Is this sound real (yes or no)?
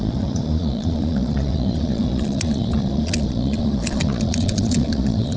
no